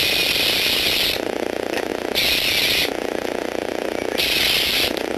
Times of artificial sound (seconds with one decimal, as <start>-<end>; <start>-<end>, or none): none